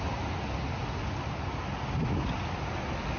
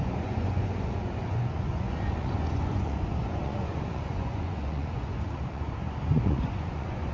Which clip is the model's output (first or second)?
second